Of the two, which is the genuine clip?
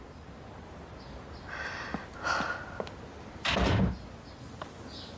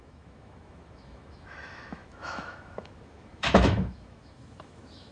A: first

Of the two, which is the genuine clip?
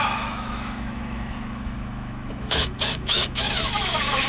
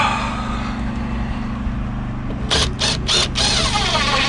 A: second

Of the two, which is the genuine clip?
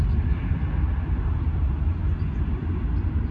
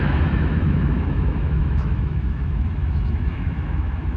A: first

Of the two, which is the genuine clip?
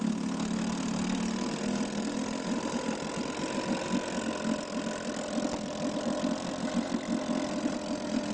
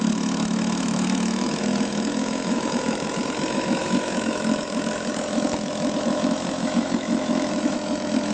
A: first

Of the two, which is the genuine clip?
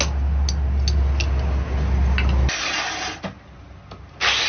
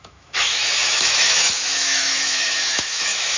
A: first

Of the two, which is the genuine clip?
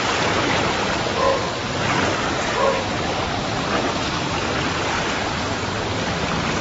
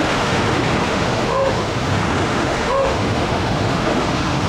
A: first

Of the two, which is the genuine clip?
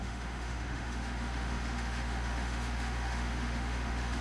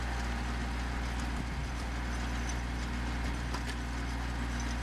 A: second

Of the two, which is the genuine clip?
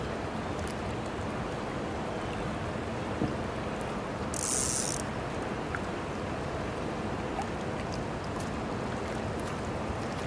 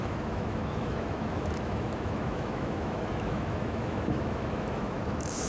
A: first